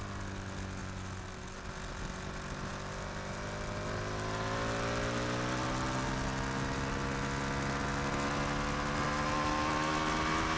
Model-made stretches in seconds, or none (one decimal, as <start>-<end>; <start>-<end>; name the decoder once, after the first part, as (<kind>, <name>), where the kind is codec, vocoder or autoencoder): none